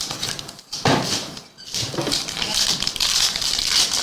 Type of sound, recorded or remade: remade